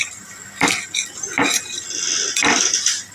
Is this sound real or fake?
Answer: real